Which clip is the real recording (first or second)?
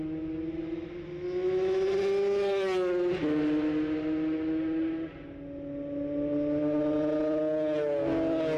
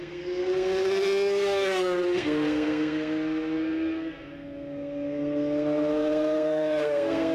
first